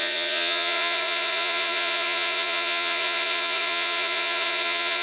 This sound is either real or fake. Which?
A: fake